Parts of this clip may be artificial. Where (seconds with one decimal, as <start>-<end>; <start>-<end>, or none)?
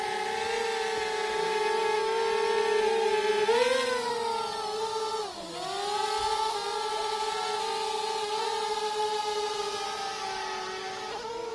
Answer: none